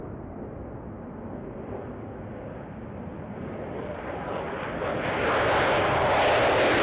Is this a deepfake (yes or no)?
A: no